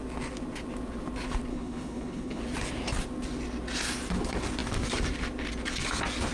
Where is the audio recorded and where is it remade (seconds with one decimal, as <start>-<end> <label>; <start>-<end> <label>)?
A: 0.0-1.5 recorded; 1.5-2.4 remade; 2.4-6.3 recorded